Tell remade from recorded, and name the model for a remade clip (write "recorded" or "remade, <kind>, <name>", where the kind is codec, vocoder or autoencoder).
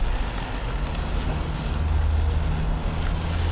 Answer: recorded